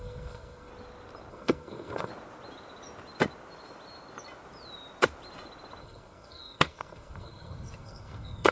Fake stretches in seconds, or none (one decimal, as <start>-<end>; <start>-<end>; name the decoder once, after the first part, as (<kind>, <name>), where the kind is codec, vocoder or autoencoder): 0.0-0.7 (codec, SNAC); 1.3-2.1; 5.8-8.5